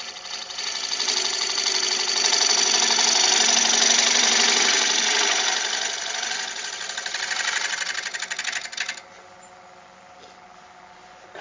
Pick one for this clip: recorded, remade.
recorded